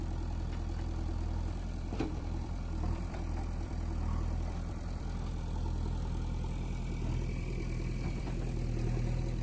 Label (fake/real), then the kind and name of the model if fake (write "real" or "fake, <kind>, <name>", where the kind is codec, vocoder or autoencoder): fake, vocoder, BigVGAN v2